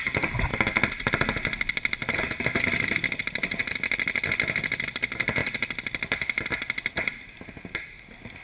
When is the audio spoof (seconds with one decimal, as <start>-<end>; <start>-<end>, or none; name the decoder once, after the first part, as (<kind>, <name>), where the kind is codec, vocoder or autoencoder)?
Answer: none